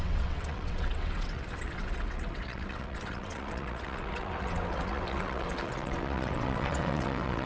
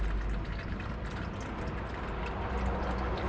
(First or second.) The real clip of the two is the second